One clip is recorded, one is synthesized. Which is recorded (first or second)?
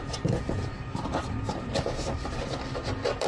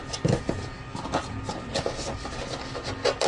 second